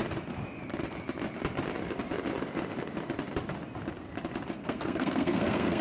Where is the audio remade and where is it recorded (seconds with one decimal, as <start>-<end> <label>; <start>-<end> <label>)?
0.0-4.6 recorded; 4.6-5.8 remade